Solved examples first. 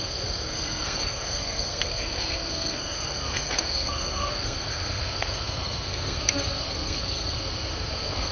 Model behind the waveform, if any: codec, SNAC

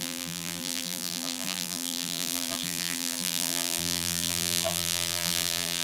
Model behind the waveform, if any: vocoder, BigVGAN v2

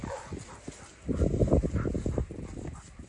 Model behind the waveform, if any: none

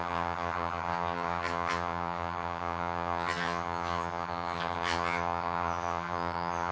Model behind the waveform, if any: vocoder, HiFi-GAN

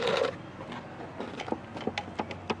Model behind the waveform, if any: none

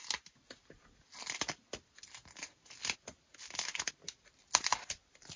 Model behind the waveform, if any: none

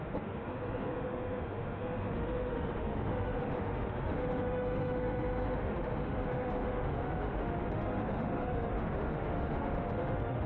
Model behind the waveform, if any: autoencoder, DAC-VAE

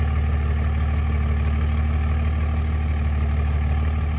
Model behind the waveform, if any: none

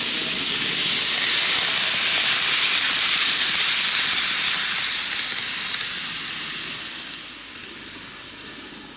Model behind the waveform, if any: none